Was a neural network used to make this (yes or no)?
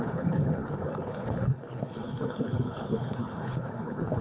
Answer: yes